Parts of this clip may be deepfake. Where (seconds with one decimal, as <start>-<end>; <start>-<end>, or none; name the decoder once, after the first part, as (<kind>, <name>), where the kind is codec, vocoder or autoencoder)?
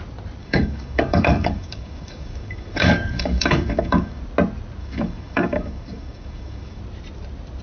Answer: 0.4-4.2 (codec, DAC); 4.8-6.8